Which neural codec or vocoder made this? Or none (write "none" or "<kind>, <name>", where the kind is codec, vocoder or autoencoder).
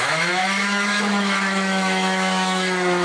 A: autoencoder, DAC-VAE